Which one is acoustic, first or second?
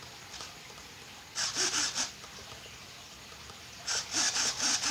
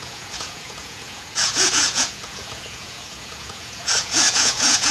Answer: first